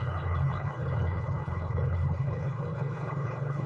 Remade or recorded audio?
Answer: remade